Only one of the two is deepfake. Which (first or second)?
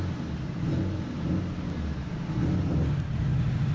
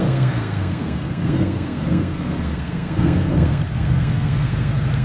second